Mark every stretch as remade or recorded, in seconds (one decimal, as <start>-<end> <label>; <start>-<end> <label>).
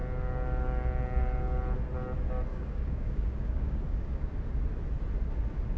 0.0-2.5 recorded; 2.5-4.3 remade; 4.3-5.8 recorded